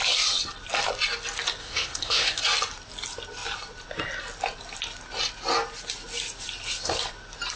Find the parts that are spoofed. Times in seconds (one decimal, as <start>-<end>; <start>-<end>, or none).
1.6-2.4